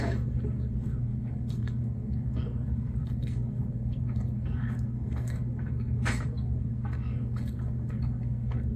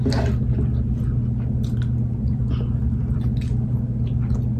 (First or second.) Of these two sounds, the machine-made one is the first